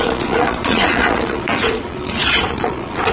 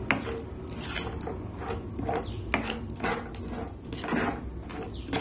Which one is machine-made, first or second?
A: first